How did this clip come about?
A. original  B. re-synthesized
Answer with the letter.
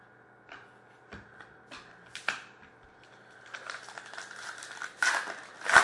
A